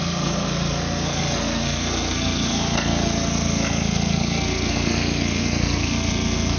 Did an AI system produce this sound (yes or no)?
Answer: yes